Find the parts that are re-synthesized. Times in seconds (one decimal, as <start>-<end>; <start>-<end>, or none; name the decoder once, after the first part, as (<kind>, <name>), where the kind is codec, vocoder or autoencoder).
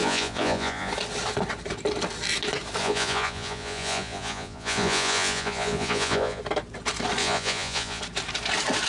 0.0-0.9 (vocoder, Vocos); 2.8-6.4; 7.2-8.0